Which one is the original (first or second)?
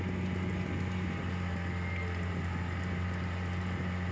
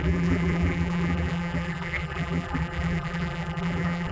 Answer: first